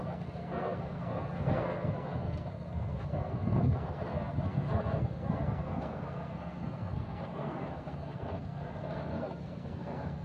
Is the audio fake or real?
fake